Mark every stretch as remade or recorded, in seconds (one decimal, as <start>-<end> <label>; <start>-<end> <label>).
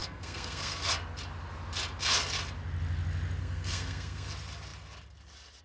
0.0-0.9 remade; 0.9-3.4 recorded; 3.4-4.3 remade; 4.3-5.6 recorded